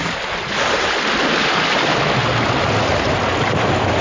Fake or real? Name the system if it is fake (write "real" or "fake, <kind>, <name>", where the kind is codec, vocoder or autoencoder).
real